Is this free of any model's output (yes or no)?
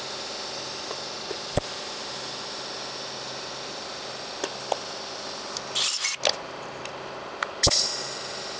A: yes